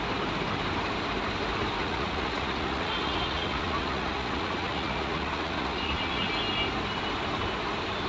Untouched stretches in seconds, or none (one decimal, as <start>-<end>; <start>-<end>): 0.0-1.8; 6.3-8.1